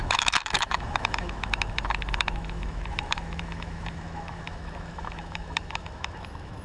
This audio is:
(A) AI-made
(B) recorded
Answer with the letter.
A